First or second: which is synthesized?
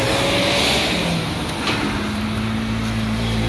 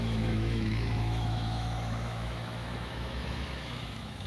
second